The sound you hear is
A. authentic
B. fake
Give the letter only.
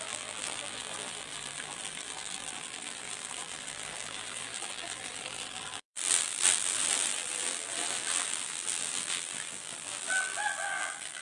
B